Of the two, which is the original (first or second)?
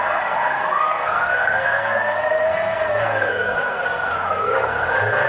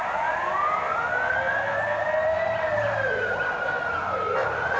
second